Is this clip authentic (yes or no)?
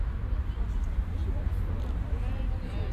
yes